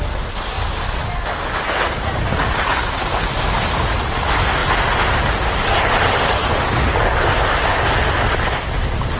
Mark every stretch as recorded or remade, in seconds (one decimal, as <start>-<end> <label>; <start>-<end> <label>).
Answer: 0.0-9.2 recorded

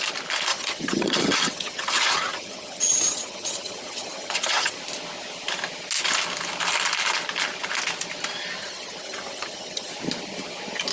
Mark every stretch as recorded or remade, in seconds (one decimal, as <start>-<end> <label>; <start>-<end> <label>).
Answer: 0.0-0.5 recorded; 0.5-4.8 remade; 4.8-8.6 recorded; 8.6-9.9 remade; 9.9-10.9 recorded

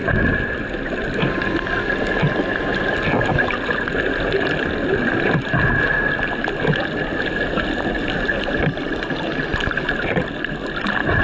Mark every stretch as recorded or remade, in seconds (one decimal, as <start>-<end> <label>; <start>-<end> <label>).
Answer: 0.0-11.2 recorded

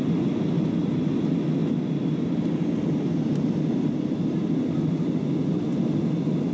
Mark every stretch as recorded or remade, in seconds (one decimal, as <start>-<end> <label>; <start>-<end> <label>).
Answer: 0.0-6.5 recorded

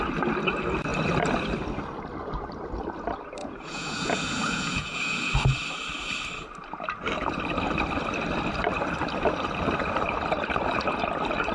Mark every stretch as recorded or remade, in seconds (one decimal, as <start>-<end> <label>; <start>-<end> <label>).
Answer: 0.0-3.4 recorded; 3.4-5.3 remade; 5.3-11.5 recorded

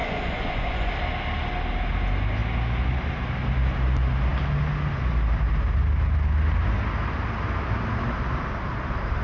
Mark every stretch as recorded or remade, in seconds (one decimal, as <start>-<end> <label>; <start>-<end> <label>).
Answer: 0.0-0.9 remade; 0.9-9.2 recorded